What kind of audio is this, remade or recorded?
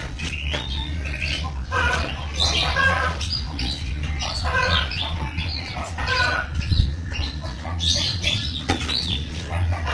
remade